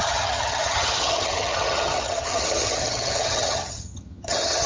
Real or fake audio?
fake